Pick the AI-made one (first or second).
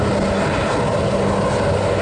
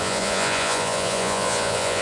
second